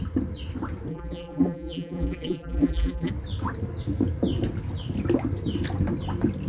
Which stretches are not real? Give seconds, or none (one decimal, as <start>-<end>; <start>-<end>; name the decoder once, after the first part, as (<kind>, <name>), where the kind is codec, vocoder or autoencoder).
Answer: 0.9-3.1 (vocoder, BigVGAN v2)